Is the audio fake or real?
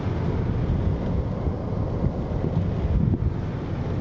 real